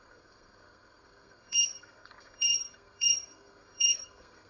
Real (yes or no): no